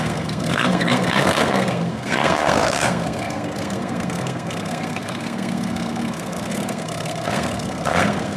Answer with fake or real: fake